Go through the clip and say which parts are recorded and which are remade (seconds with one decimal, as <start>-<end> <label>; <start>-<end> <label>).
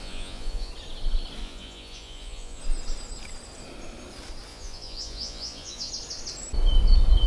0.0-0.7 remade; 0.7-1.4 recorded; 1.4-2.6 remade; 2.6-4.5 recorded; 4.5-5.9 remade; 5.9-7.3 recorded